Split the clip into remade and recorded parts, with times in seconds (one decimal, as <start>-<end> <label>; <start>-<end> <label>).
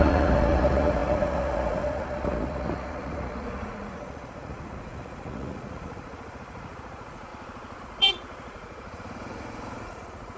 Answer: 0.0-7.3 remade; 7.3-7.8 recorded; 7.8-10.4 remade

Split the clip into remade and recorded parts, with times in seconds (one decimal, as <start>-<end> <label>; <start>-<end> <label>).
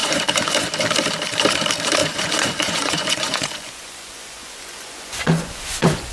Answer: 0.0-0.7 remade; 0.7-2.0 recorded; 2.0-6.1 remade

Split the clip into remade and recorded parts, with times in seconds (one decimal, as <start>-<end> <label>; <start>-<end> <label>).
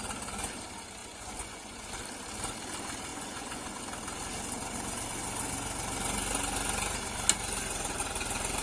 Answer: 0.0-1.0 recorded; 1.0-1.9 remade; 1.9-3.1 recorded; 3.1-3.8 remade; 3.8-8.6 recorded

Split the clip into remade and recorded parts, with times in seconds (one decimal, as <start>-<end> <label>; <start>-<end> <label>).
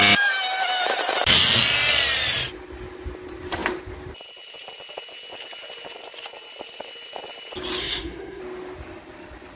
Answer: 0.0-7.8 recorded; 7.8-8.4 remade; 8.4-9.6 recorded